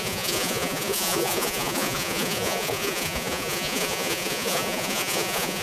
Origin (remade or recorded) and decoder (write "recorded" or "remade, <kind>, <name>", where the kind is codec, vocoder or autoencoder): remade, vocoder, Vocos